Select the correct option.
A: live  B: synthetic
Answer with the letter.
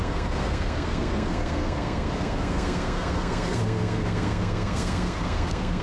B